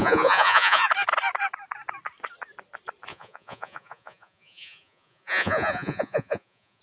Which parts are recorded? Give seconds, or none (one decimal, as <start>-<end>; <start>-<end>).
0.9-3.1